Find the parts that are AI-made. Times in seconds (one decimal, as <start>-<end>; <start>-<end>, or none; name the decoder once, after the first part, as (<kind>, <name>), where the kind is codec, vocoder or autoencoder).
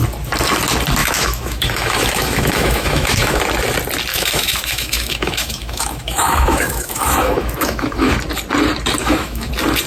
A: 1.0-3.4 (autoencoder, DAC-VAE); 4.1-8.1; 9.0-9.5